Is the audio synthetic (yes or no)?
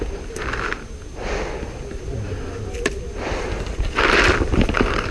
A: no